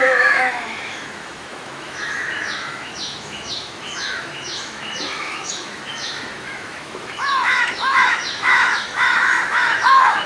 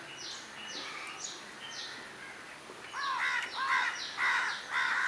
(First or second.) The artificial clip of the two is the first